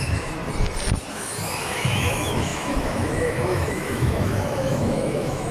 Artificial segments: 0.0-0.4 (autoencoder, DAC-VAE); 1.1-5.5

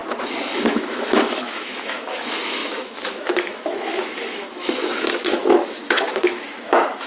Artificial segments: 0.5-7.1 (autoencoder, DAC-VAE)

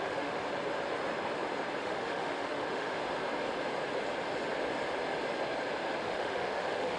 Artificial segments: 0.0-0.4 (autoencoder, DAC-VAE); 1.8-3.0; 6.0-7.0